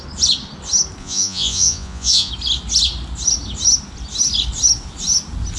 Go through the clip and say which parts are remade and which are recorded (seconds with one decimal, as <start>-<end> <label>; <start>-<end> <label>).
0.0-1.0 recorded; 1.0-2.3 remade; 2.3-5.6 recorded